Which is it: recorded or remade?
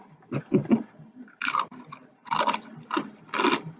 recorded